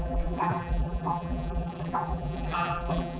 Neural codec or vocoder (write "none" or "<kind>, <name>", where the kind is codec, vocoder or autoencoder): vocoder, BigVGAN v2